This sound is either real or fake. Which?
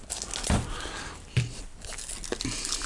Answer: real